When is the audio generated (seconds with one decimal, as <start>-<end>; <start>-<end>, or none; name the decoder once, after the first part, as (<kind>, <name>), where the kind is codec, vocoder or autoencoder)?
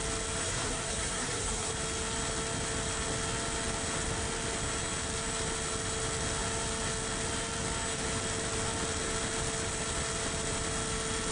0.4-1.7 (codec, SNAC)